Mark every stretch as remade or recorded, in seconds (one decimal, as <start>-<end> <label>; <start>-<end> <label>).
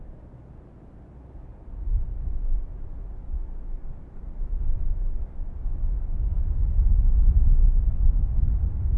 0.0-6.3 recorded; 6.3-7.7 remade; 7.7-9.0 recorded